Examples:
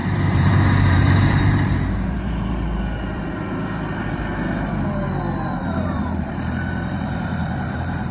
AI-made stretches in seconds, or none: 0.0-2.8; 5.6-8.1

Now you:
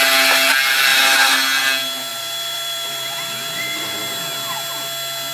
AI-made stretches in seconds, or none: 2.1-4.0

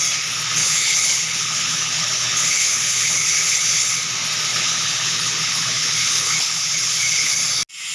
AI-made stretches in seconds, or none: 0.6-3.9; 4.5-7.4

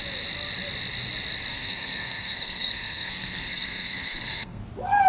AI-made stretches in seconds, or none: 1.5-4.6

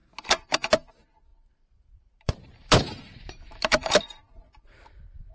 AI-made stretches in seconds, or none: 1.3-4.5

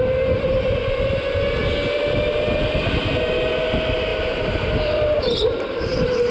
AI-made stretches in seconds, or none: 4.1-6.3

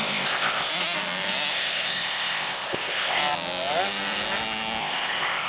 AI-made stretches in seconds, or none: 0.0-0.7; 1.5-3.2; 4.8-5.5

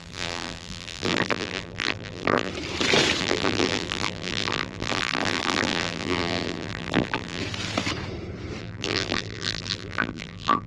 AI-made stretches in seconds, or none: 0.0-2.5; 3.2-7.4; 8.6-10.7